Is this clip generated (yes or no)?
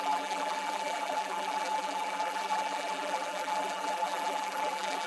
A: yes